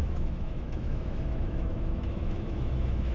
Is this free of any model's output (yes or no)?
no